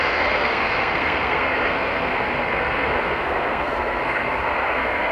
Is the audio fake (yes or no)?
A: yes